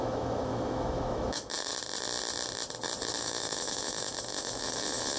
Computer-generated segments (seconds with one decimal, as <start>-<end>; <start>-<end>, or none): 0.0-1.7; 3.2-5.2